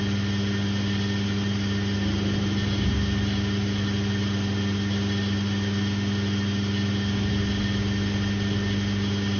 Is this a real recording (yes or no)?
yes